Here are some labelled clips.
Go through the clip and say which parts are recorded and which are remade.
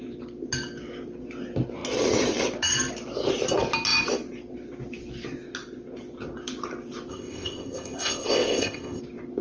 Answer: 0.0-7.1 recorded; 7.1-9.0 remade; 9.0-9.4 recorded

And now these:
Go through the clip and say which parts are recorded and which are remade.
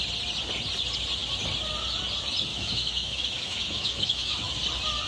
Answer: 0.0-2.5 recorded; 2.5-4.5 remade; 4.5-5.1 recorded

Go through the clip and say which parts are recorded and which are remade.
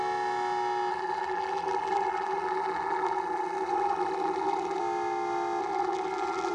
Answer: 0.0-0.9 recorded; 0.9-4.8 remade; 4.8-5.6 recorded; 5.6-6.5 remade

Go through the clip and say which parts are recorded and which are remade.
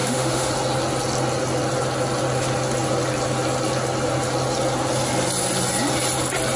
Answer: 0.0-0.5 remade; 0.5-6.6 recorded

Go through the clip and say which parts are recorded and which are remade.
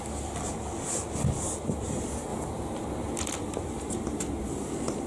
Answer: 0.0-5.1 recorded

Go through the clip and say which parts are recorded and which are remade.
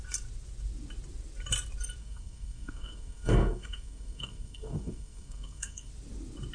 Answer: 0.0-2.0 recorded; 2.0-5.9 remade; 5.9-6.5 recorded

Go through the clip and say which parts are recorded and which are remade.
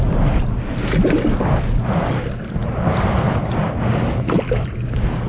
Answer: 0.0-5.3 recorded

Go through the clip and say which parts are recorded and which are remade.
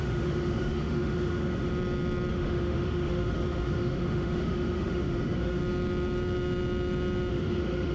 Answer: 0.0-1.7 remade; 1.7-2.3 recorded; 2.3-5.6 remade; 5.6-7.3 recorded; 7.3-7.9 remade